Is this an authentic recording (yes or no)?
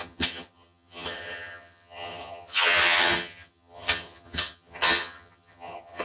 no